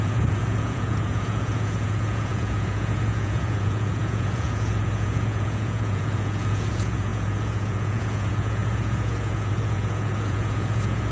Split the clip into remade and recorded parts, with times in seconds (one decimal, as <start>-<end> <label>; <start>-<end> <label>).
0.0-11.1 remade